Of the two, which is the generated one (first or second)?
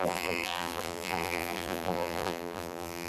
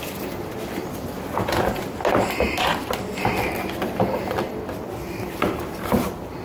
first